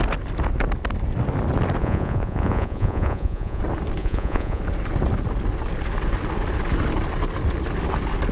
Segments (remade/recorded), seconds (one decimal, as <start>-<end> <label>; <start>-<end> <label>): 0.0-1.8 recorded; 1.8-3.6 remade; 3.6-4.0 recorded; 4.0-4.6 remade; 4.6-8.3 recorded